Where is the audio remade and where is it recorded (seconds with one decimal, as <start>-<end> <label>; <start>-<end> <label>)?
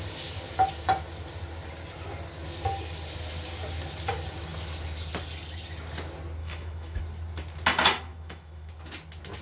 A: 0.0-6.4 recorded; 6.4-7.0 remade; 7.0-8.1 recorded; 8.1-8.7 remade; 8.7-9.4 recorded